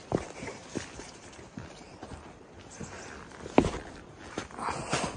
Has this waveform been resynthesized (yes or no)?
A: no